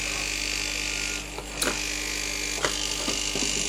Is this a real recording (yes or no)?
yes